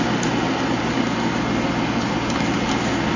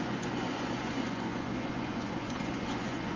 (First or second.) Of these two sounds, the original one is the first